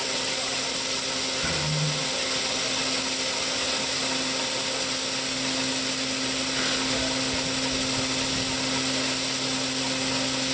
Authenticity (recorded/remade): recorded